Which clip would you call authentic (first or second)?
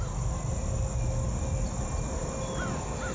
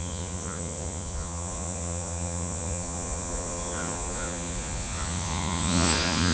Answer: first